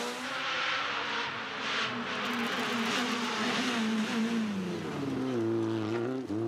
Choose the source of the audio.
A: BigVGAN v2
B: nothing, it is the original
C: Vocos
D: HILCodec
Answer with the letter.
B